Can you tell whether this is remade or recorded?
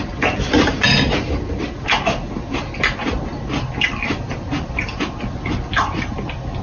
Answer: recorded